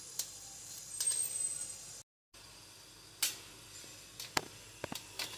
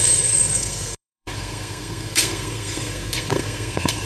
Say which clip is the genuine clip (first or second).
first